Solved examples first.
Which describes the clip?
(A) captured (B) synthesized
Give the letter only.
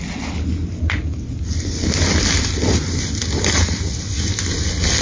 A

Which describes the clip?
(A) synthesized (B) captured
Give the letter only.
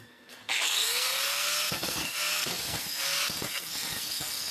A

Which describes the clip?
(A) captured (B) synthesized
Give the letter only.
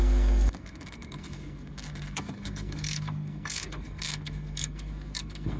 B